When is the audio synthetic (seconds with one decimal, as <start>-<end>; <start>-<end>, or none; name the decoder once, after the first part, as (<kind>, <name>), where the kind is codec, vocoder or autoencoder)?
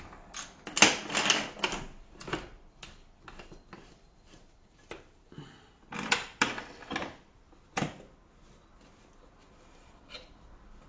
none